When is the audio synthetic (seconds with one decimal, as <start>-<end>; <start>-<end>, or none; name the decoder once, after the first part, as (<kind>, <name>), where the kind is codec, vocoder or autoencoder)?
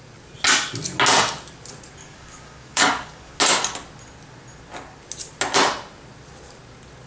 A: 2.0-3.4 (codec, DAC)